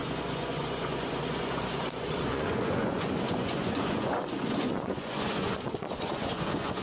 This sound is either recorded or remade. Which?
remade